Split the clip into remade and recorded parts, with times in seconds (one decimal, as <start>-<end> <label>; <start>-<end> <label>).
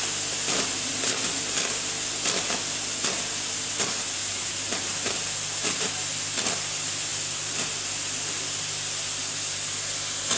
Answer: 0.0-4.2 recorded; 4.2-5.9 remade; 5.9-10.4 recorded